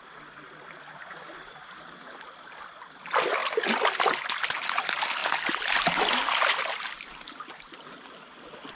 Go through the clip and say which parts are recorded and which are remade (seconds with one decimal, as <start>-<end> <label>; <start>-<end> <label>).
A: 0.0-8.8 recorded